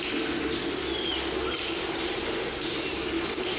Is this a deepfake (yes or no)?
no